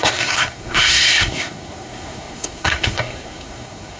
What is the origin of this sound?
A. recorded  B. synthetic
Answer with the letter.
B